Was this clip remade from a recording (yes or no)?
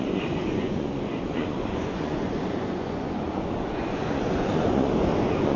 yes